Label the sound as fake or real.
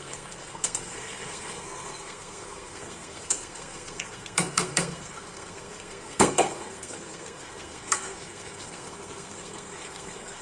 fake